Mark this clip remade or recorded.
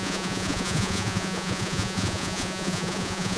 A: remade